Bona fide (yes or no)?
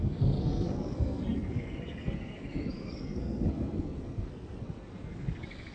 no